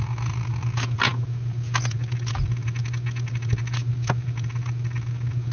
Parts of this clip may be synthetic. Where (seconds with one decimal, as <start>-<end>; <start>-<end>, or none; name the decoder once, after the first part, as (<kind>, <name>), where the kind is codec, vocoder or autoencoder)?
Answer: none